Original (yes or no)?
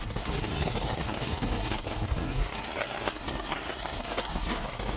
no